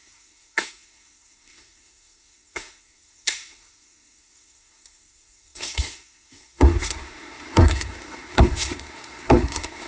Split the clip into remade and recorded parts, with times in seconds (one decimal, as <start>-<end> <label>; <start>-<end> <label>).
0.0-9.9 remade